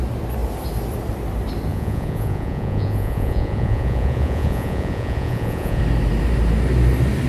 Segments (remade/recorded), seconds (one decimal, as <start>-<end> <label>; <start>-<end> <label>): 0.0-1.7 recorded; 1.7-5.8 remade; 5.8-7.3 recorded

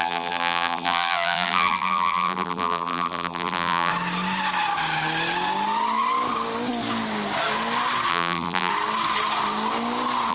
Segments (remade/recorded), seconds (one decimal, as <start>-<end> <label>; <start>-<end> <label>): 0.0-3.9 remade; 3.9-8.1 recorded; 8.1-8.7 remade; 8.7-10.3 recorded

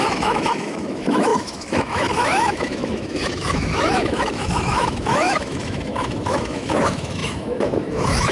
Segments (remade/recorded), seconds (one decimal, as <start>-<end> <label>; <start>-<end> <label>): 0.0-8.3 remade